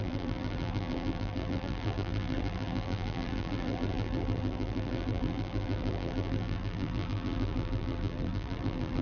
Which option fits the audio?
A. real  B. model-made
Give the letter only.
B